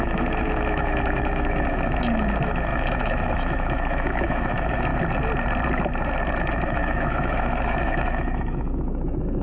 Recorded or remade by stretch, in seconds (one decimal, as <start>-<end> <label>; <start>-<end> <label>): 0.0-4.9 remade; 4.9-6.4 recorded; 6.4-9.4 remade